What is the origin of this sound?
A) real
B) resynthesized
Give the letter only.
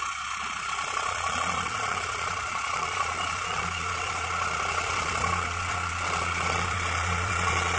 B